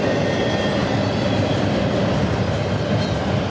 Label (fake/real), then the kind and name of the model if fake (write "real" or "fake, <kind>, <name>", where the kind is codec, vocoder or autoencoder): real